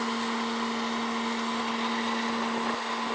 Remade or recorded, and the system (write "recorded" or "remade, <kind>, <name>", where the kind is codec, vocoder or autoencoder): recorded